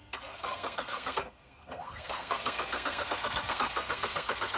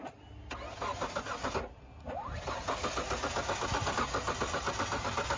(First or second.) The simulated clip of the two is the first